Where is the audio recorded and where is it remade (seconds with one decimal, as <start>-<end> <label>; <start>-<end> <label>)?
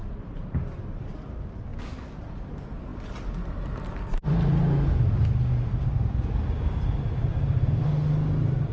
0.0-8.7 recorded